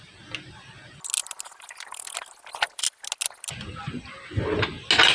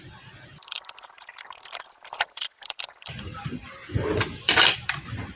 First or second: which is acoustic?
first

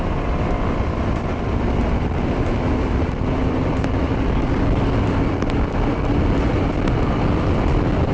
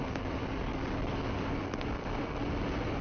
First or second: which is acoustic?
second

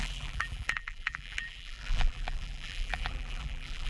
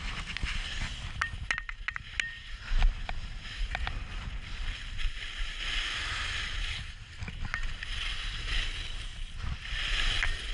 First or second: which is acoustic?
second